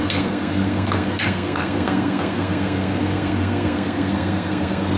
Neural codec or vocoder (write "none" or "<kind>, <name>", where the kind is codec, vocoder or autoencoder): codec, SNAC